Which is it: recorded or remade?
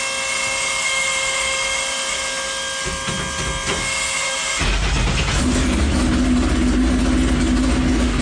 recorded